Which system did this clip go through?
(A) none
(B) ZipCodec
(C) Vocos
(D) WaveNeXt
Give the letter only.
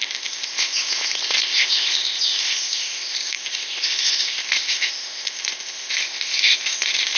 B